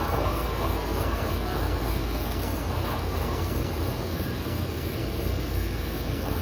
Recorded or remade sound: remade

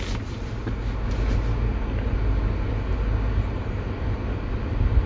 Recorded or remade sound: recorded